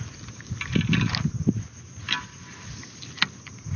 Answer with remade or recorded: recorded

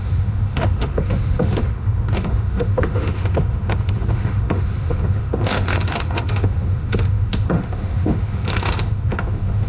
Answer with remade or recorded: remade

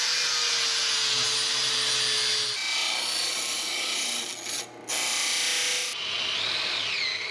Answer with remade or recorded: recorded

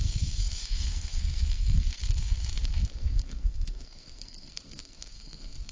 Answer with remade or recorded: remade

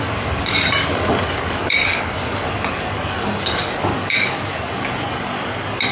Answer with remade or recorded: remade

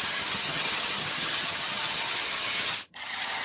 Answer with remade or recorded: remade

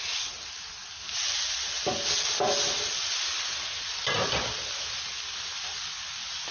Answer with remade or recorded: recorded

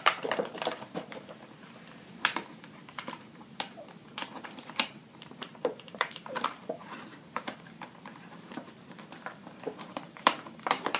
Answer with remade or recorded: remade